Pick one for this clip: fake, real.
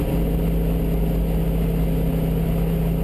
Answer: real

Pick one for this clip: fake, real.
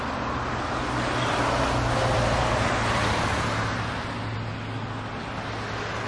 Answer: real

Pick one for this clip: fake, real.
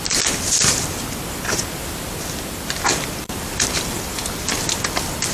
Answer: real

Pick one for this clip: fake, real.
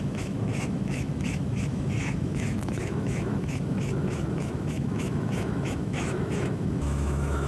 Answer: fake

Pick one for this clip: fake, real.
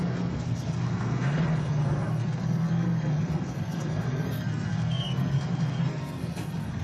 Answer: fake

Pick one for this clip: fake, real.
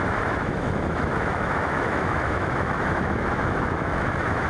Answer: fake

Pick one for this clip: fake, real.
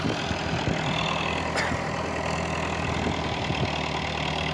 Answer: real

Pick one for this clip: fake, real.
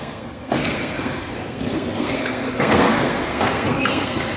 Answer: fake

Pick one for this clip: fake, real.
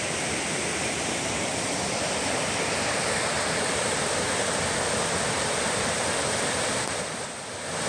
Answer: real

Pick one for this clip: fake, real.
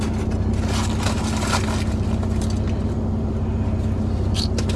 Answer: real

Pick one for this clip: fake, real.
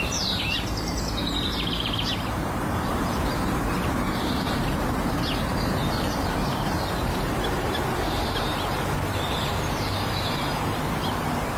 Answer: fake